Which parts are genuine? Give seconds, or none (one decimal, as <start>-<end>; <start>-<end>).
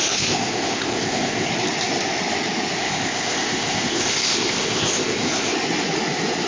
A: 1.5-2.8; 5.5-6.5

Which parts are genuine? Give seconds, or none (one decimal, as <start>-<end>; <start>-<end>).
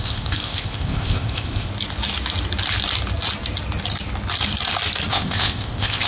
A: 1.7-5.1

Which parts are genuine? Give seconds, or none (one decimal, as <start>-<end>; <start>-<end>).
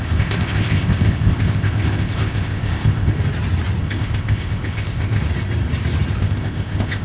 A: 3.2-3.8; 5.2-6.2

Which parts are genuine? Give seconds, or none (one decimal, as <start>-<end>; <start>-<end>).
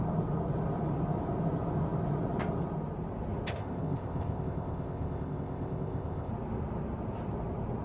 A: 0.0-3.5; 6.3-7.8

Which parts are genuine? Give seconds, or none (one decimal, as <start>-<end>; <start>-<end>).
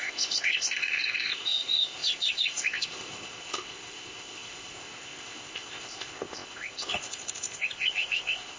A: none